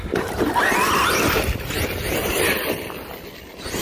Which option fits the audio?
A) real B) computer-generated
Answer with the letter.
A